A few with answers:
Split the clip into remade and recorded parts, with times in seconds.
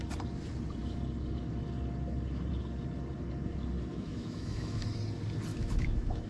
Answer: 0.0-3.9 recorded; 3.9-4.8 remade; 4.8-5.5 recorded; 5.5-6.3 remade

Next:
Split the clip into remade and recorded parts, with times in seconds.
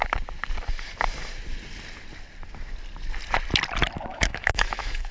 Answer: 0.0-4.1 recorded; 4.1-5.1 remade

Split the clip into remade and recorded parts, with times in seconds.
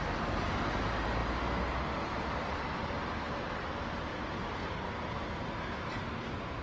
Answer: 0.0-6.6 recorded